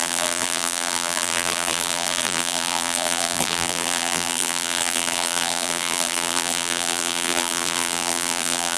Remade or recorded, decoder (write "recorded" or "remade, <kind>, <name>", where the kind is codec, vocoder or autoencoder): remade, vocoder, BigVGAN v2